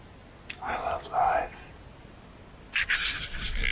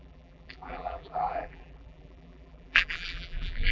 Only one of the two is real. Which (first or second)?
first